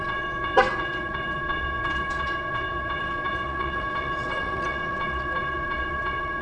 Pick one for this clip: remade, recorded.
remade